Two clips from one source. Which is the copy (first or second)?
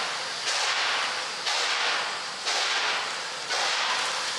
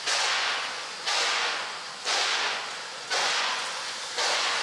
second